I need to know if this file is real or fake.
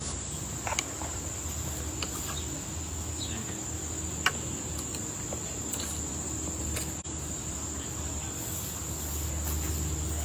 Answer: real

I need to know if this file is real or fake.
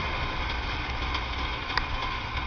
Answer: real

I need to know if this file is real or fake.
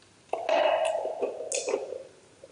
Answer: real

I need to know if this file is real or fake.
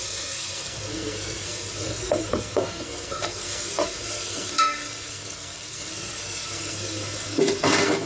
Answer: fake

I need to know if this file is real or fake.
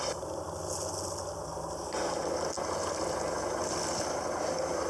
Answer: real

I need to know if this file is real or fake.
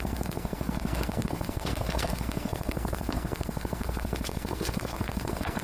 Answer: fake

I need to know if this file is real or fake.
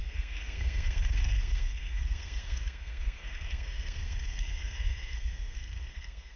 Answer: fake